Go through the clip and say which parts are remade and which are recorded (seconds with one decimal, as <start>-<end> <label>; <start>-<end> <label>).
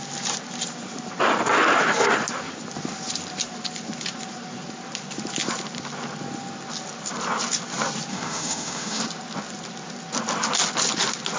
0.0-8.1 recorded; 8.1-9.0 remade; 9.0-11.4 recorded